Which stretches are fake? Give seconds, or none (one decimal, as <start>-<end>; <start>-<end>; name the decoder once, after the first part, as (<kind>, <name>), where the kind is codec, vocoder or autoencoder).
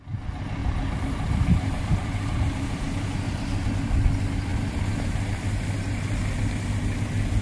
0.6-3.7 (vocoder, BigVGAN v2)